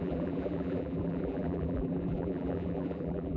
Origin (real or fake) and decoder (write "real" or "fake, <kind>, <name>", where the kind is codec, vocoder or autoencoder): fake, vocoder, BigVGAN v2